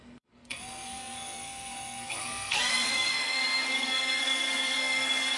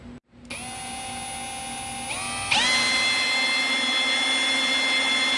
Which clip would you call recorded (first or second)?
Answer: second